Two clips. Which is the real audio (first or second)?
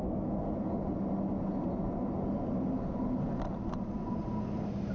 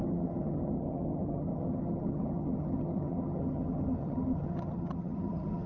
first